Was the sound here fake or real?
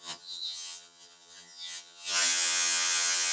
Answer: fake